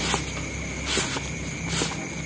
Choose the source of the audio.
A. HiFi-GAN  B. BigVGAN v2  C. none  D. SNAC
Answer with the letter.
C